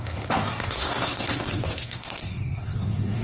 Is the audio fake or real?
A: fake